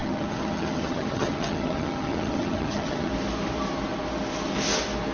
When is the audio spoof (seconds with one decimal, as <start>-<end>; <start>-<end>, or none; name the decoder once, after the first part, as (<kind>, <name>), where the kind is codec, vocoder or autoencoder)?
0.0-3.1 (vocoder, HiFi-GAN)